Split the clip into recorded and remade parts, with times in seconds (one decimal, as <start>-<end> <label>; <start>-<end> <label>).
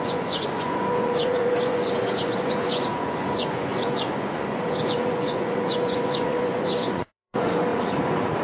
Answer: 0.0-8.4 remade